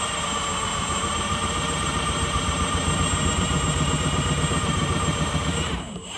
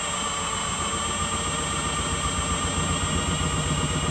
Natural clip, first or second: second